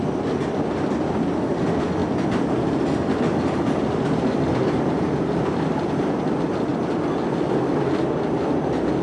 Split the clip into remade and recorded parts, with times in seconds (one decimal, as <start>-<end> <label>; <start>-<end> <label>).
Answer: 0.0-2.0 remade; 2.0-3.1 recorded; 3.1-6.7 remade; 6.7-8.2 recorded; 8.2-9.0 remade